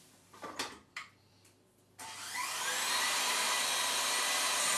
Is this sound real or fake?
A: fake